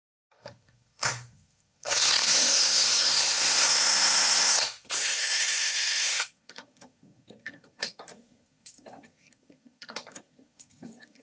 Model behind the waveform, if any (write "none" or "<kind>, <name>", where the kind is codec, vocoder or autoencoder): codec, SNAC